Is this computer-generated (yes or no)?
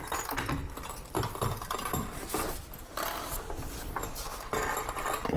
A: yes